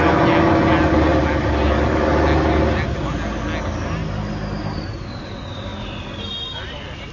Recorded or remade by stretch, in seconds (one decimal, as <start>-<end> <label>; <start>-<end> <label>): 0.0-7.1 recorded